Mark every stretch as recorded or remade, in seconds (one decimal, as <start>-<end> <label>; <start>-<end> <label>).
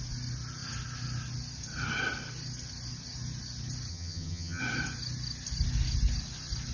0.0-3.9 recorded; 3.9-4.6 remade; 4.6-6.7 recorded